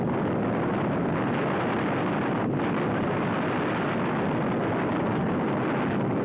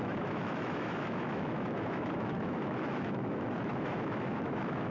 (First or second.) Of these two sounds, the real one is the first